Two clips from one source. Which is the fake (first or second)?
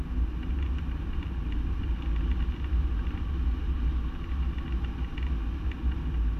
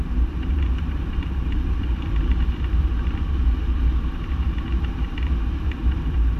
second